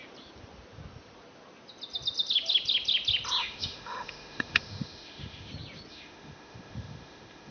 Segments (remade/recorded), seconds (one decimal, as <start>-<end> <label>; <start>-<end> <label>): 0.0-3.4 recorded; 3.4-5.5 remade; 5.5-5.9 recorded; 5.9-7.5 remade